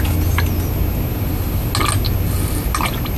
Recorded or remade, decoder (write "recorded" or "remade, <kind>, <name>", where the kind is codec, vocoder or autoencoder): recorded